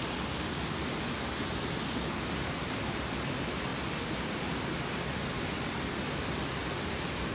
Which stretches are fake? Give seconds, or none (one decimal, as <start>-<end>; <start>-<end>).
none